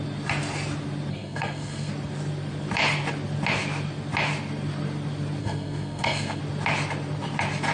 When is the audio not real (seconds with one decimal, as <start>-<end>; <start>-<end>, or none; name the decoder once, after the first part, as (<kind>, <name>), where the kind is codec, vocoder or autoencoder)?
1.1-1.9 (codec, SNAC); 5.4-6.4